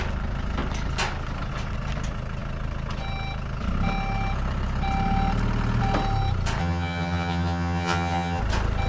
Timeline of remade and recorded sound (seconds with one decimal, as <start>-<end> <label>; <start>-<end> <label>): 0.0-6.6 recorded; 6.6-8.4 remade; 8.4-8.9 recorded